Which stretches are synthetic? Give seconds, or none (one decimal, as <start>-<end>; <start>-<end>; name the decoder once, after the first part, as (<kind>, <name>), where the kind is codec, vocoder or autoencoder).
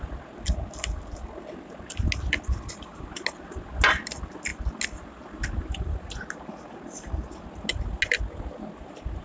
none